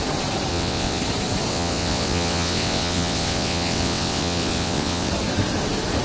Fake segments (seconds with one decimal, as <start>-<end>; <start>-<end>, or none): 0.5-1.0; 1.5-5.1